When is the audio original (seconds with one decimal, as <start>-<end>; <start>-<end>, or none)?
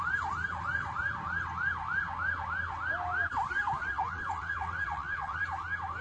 0.0-3.8; 5.4-6.0